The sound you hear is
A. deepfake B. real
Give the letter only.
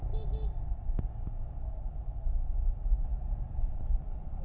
B